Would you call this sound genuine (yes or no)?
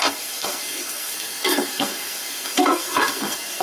no